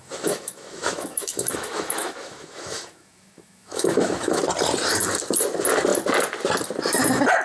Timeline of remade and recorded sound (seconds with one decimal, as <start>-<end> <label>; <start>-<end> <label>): 0.0-4.4 remade; 4.4-7.4 recorded